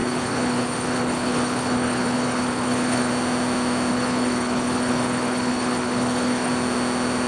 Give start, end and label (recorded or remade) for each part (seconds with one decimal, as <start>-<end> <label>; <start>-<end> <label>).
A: 0.0-3.1 remade; 3.1-3.9 recorded; 3.9-6.5 remade; 6.5-7.3 recorded